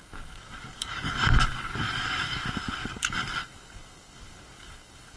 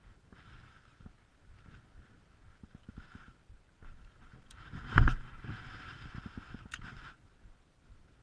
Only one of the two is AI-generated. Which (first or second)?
first